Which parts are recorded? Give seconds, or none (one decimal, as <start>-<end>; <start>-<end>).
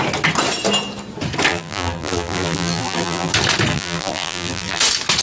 0.0-1.5; 3.3-3.7; 4.8-5.2